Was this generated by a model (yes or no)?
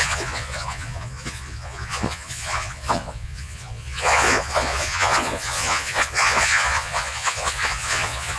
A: yes